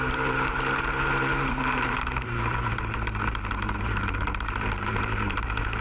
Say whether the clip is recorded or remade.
remade